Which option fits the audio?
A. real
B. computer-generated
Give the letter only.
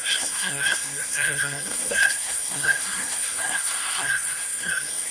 B